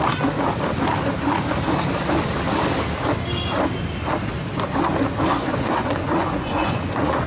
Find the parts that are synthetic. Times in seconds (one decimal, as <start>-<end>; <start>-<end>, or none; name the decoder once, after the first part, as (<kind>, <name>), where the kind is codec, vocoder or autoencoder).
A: 5.3-7.3 (vocoder, Vocos)